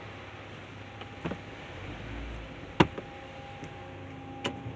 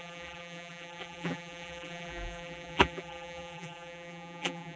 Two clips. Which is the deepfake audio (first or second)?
second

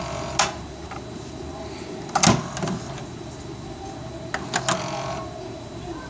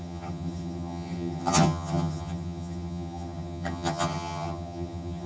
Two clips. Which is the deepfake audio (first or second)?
second